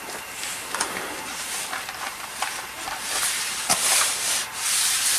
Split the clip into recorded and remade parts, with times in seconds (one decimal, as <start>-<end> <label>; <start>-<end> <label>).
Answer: 0.0-1.3 recorded; 1.3-4.4 remade; 4.4-5.2 recorded